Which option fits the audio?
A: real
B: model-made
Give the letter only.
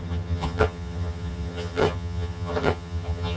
B